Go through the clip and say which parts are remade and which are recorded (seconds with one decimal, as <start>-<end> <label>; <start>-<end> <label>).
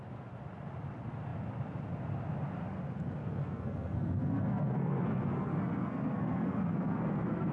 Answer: 0.0-3.2 recorded; 3.2-7.5 remade